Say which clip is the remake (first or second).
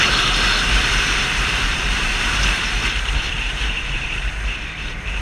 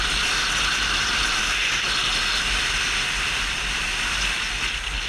first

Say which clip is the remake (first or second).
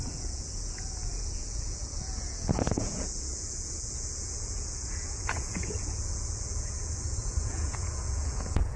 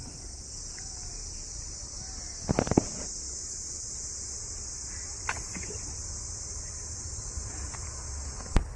first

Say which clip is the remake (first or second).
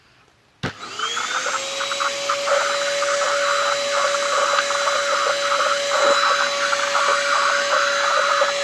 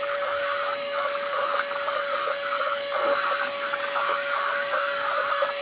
second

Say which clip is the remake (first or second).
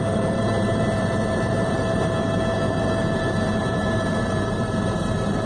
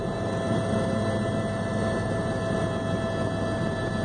first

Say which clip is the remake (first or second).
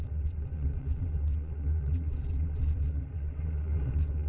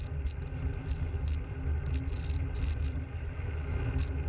first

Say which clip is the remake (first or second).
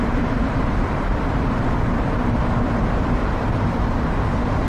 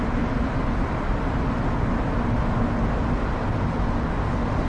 first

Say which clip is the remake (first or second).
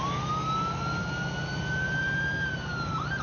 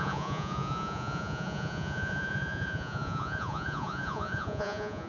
second